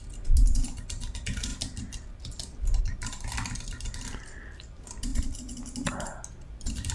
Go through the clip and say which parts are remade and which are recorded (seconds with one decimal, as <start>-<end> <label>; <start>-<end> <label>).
0.0-6.9 recorded